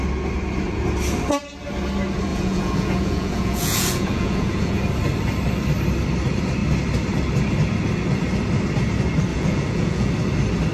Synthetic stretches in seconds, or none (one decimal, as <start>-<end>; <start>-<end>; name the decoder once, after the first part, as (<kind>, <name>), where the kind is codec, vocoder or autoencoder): 2.3-4.8 (vocoder, Vocos); 9.3-10.1